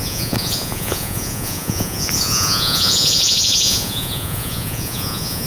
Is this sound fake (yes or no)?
yes